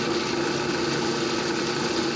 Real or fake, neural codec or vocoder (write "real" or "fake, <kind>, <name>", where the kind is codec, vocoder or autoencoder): real